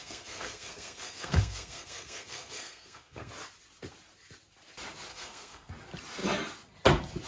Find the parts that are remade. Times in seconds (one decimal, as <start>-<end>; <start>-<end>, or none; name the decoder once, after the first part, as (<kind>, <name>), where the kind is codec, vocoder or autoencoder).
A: 0.0-3.3 (codec, SNAC); 5.1-5.7